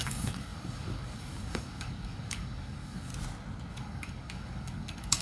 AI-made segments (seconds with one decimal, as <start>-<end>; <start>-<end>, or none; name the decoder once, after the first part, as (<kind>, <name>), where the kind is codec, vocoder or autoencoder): 0.0-3.1 (codec, DAC); 3.7-5.2